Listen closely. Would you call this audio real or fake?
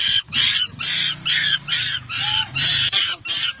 real